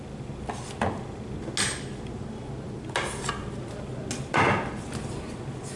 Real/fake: real